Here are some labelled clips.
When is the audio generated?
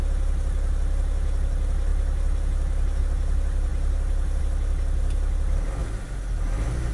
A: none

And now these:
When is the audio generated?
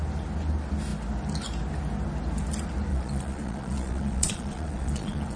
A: 2.9-5.4 (vocoder, Vocos)